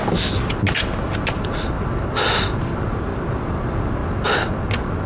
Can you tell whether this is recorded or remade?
recorded